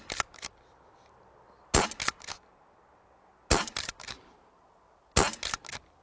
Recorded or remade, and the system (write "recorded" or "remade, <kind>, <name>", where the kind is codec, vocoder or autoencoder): recorded